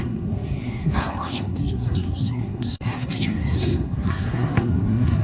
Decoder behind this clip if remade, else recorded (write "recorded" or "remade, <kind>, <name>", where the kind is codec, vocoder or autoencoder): remade, codec, SNAC